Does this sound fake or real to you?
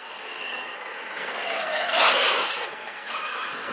fake